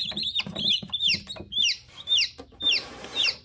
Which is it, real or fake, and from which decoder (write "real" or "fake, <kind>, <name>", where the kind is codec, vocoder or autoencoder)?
fake, vocoder, BigVGAN v2